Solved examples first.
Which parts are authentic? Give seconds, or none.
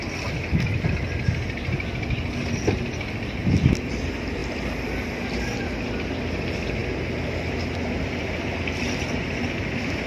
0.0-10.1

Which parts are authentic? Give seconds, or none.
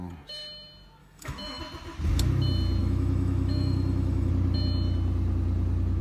0.0-1.0; 1.6-2.8; 4.3-6.0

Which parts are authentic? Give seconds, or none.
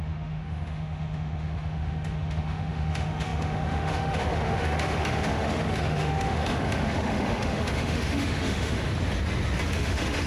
8.9-9.7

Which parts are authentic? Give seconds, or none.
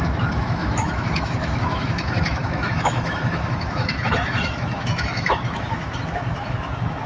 none